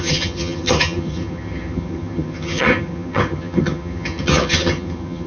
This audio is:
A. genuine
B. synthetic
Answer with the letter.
B